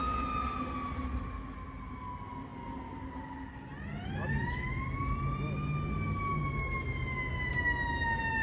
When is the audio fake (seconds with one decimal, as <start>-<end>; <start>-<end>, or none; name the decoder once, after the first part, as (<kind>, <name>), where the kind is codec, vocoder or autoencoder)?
none